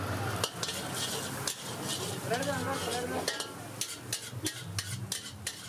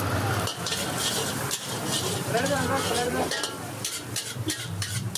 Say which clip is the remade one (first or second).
second